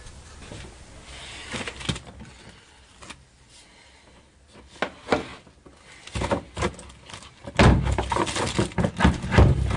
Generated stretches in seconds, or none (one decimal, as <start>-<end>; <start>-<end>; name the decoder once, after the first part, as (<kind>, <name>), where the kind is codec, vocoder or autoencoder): none